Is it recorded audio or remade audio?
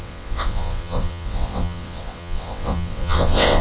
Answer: remade